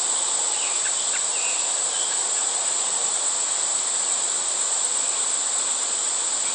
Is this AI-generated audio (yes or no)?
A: no